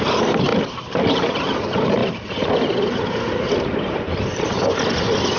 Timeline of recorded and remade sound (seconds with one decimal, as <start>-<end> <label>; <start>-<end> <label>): 0.0-2.0 remade; 2.0-3.5 recorded; 3.5-4.6 remade; 4.6-5.4 recorded